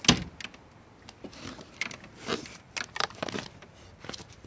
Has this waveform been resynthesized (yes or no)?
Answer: no